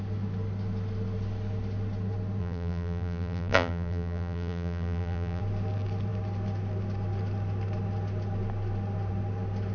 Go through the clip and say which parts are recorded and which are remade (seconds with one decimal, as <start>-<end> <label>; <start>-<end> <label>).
0.0-2.4 recorded; 2.4-5.4 remade; 5.4-9.7 recorded